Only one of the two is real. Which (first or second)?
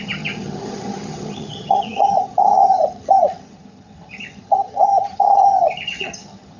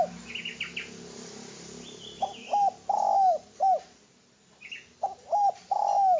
second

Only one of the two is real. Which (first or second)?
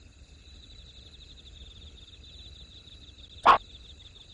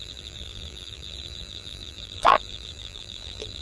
first